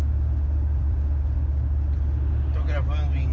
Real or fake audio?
real